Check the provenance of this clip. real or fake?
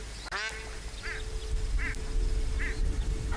real